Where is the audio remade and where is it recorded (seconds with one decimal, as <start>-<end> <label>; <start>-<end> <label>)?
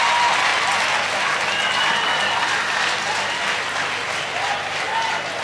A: 0.0-5.4 recorded